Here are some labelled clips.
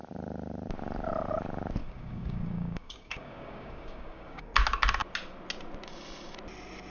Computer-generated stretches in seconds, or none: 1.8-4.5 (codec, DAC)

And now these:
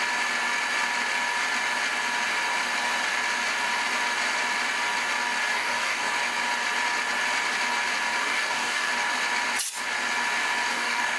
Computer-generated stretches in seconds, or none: 5.5-6.1 (codec, DAC); 8.2-8.9; 10.7-11.2

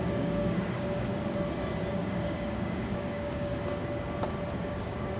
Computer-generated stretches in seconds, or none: 0.0-1.1 (codec, DAC); 1.9-3.5; 4.7-5.2

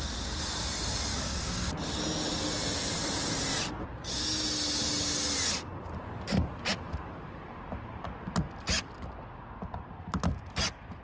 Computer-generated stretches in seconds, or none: 1.1-1.7 (codec, DAC)